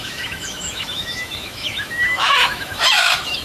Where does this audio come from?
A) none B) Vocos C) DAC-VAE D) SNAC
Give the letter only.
C